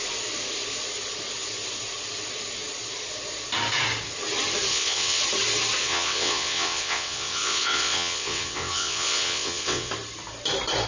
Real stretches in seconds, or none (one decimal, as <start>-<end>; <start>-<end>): 0.0-4.7; 5.2-5.8; 9.9-10.9